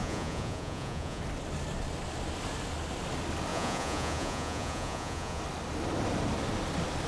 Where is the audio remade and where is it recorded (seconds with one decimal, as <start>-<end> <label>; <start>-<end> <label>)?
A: 0.0-1.2 remade; 1.2-3.5 recorded; 3.5-5.4 remade; 5.4-7.1 recorded